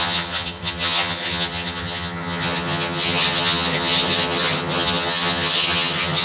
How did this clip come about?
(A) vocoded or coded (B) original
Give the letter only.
A